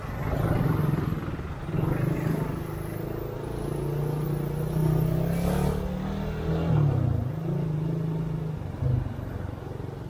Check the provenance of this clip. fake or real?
real